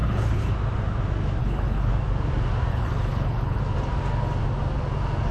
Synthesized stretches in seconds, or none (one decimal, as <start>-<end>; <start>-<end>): 0.0-0.5; 1.4-1.9; 2.7-3.6